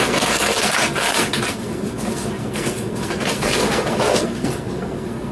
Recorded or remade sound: remade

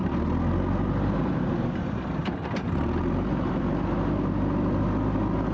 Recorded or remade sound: recorded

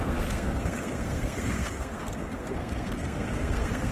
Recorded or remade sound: remade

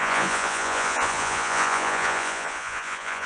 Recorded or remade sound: remade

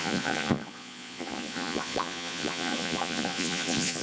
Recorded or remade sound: remade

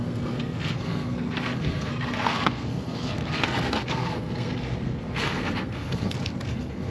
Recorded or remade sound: remade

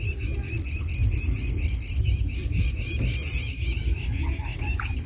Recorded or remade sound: recorded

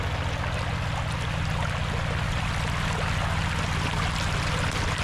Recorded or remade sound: recorded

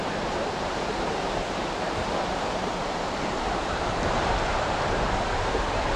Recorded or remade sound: remade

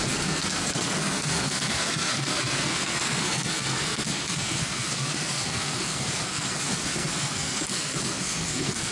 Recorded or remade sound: remade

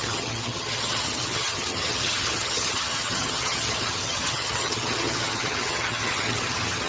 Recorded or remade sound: remade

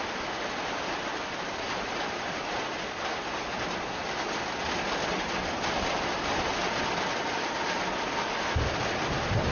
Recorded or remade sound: recorded